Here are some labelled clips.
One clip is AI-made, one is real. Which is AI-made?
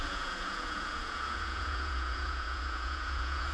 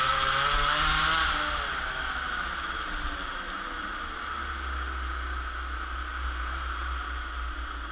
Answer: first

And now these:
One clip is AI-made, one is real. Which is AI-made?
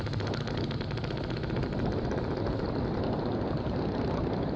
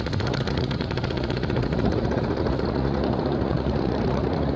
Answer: second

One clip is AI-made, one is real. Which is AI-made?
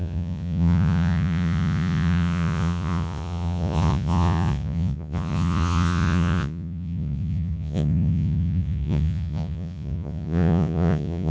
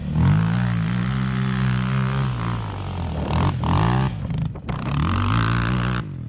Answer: first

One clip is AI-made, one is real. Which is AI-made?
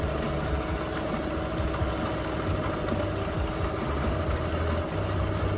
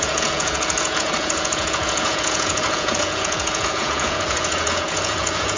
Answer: second